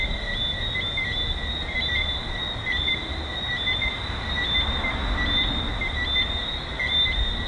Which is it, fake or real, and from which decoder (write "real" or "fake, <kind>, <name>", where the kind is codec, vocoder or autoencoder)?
real